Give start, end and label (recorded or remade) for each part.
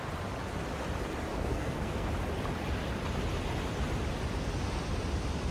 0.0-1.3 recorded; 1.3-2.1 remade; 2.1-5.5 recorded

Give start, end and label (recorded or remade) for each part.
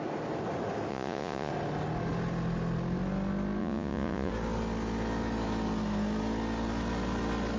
0.0-0.9 recorded; 0.9-1.5 remade; 1.5-3.6 recorded; 3.6-4.3 remade; 4.3-7.6 recorded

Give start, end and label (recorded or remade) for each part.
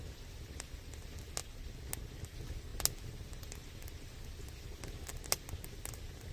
0.0-6.3 recorded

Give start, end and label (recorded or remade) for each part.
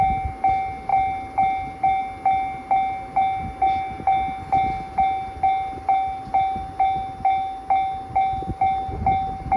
0.0-9.6 recorded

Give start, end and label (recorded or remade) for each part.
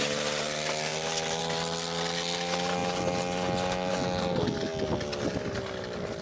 0.0-6.2 recorded